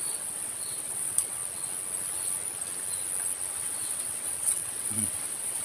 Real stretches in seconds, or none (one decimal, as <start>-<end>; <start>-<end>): 1.4-3.5